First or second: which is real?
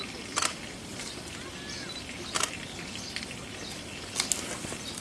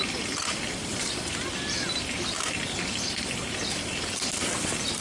first